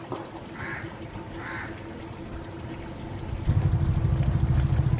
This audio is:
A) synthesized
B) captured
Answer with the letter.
B